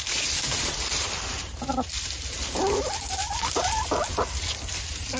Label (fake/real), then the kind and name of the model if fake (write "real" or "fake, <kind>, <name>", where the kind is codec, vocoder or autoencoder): real